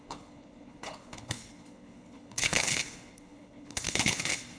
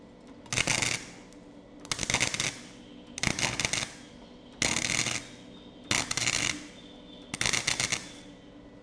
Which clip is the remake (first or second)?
first